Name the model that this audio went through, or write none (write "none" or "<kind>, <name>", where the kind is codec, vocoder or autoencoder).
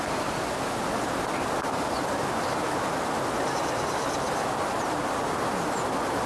none